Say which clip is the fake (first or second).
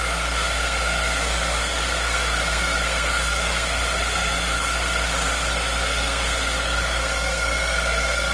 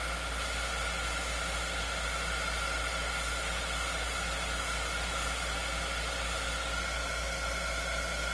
first